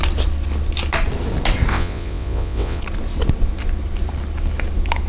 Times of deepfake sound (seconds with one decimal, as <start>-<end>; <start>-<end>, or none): 1.7-2.8